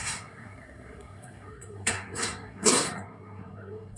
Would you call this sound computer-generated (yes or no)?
yes